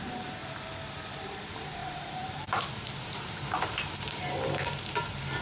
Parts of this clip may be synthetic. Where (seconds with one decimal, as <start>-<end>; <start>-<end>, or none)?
0.0-0.4; 1.1-5.4